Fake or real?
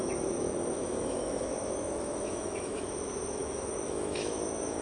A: fake